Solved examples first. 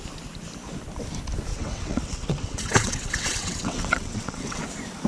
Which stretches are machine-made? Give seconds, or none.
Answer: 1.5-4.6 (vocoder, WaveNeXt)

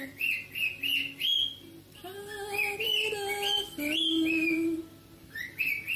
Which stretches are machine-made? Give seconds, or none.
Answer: none